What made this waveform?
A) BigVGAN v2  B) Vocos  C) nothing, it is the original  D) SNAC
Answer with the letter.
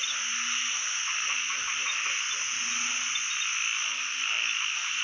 C